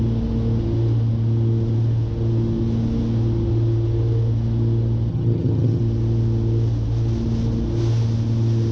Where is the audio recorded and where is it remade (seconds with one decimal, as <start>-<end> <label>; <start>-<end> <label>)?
0.0-5.1 recorded; 5.1-5.8 remade; 5.8-8.7 recorded